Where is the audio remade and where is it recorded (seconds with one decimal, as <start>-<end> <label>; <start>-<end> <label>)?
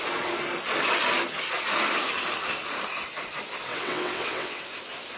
0.0-3.7 recorded; 3.7-4.6 remade; 4.6-5.2 recorded